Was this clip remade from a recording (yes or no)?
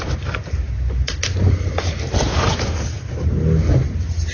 no